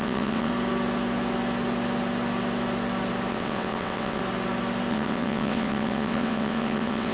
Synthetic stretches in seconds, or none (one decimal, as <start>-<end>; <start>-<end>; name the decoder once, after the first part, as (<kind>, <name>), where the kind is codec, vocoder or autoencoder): 0.0-0.5 (vocoder, WaveNeXt); 3.3-4.2; 4.9-7.1